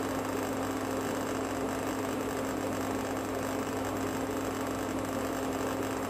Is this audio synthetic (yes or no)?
no